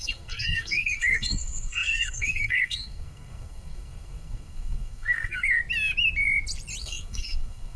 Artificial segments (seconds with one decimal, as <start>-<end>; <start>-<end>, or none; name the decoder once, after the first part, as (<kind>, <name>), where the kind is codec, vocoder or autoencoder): 0.0-5.6 (codec, SNAC); 6.8-7.8